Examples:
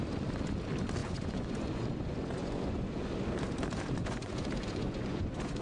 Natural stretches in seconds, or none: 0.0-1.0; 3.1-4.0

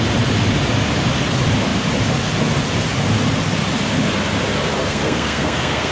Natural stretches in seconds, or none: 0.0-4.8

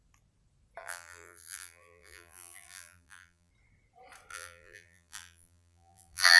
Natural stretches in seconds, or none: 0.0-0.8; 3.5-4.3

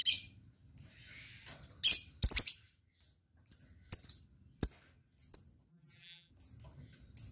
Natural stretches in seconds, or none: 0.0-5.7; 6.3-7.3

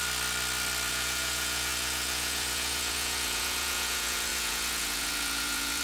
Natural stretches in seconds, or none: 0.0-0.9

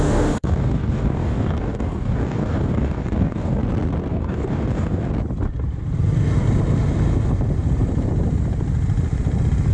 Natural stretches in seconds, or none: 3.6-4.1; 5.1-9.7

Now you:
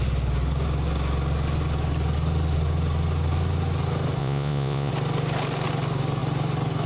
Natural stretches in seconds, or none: 0.0-4.2; 4.9-6.9